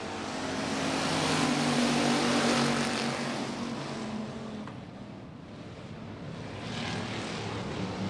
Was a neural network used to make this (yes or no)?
no